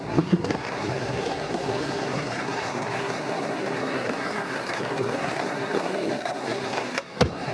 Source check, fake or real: fake